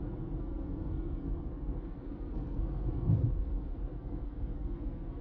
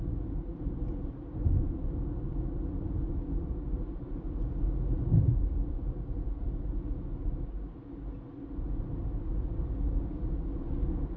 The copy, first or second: first